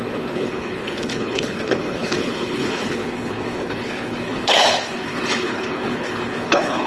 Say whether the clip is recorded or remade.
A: remade